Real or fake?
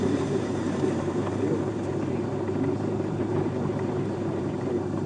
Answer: fake